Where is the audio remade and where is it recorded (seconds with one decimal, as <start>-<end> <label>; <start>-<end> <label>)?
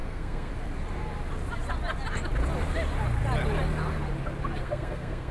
0.0-0.5 remade; 0.5-4.6 recorded; 4.6-5.3 remade